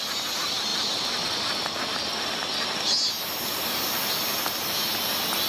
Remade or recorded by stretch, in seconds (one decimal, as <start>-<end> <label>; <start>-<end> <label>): 0.0-5.5 recorded